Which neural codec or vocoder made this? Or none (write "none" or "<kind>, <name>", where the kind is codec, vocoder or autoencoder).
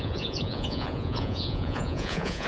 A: vocoder, Vocos